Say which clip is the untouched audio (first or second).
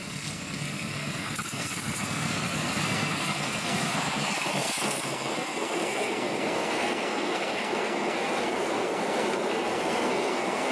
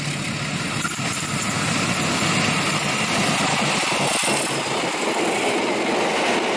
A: second